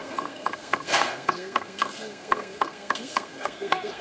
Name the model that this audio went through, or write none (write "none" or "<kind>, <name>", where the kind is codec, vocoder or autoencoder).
codec, SNAC